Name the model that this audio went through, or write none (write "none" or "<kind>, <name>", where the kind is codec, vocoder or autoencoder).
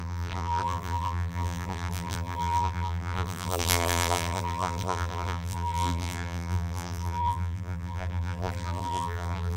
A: vocoder, BigVGAN v2